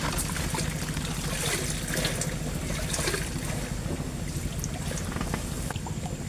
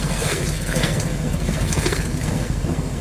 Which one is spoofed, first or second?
second